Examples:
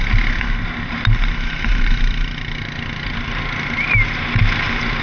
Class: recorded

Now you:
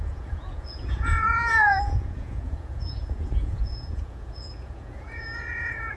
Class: remade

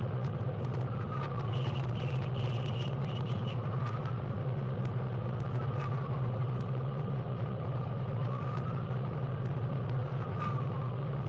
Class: remade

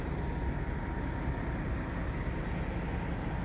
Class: recorded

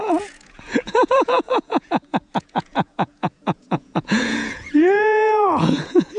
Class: remade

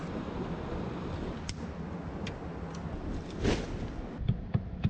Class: recorded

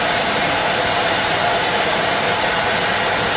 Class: recorded